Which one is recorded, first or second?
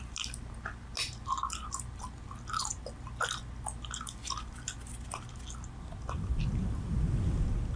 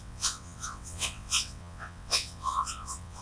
first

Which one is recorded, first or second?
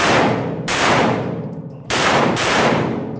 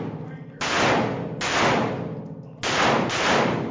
second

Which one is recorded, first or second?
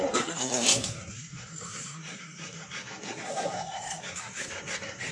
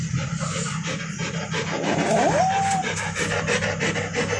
second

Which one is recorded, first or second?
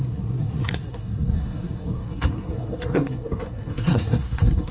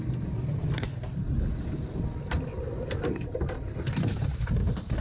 second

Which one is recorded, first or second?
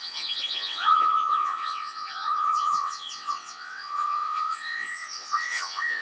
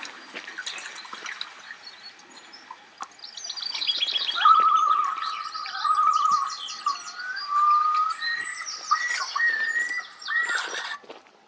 second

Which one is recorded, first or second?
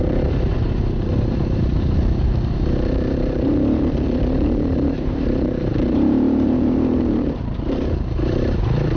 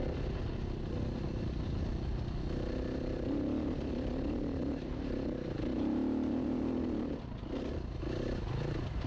second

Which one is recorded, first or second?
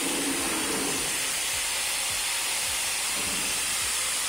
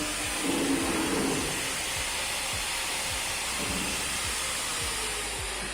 second